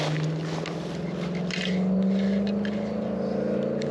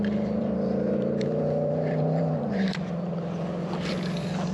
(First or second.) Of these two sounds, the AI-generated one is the second